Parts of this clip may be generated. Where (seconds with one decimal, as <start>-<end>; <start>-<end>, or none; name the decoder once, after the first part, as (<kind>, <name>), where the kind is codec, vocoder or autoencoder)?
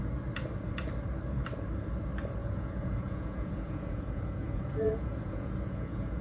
2.4-6.2 (vocoder, Vocos)